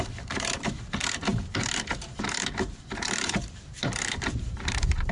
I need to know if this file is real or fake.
fake